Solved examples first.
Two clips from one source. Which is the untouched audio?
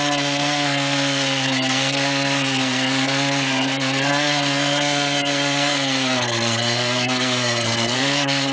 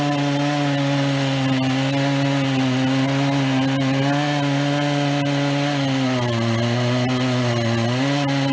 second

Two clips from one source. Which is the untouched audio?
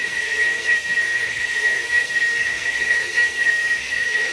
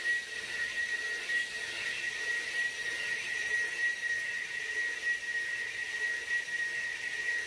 second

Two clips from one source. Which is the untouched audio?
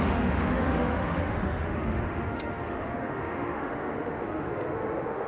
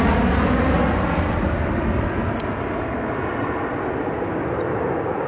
second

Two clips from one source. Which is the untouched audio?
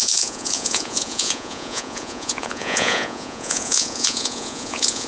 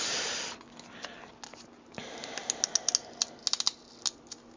second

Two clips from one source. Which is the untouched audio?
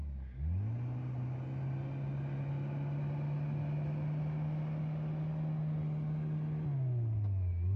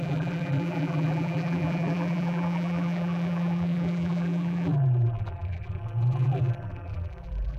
first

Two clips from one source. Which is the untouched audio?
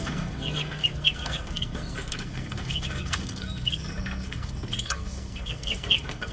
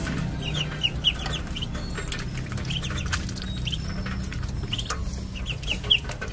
second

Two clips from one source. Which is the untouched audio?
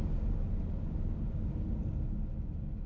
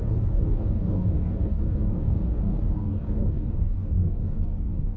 first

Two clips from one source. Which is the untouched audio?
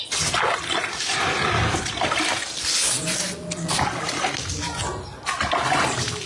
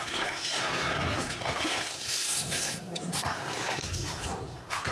first